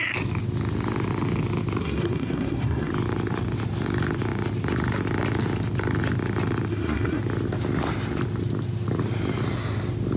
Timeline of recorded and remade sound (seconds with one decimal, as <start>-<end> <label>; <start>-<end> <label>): 0.0-1.8 recorded; 1.8-2.9 remade; 2.9-6.7 recorded; 6.7-7.2 remade; 7.2-10.2 recorded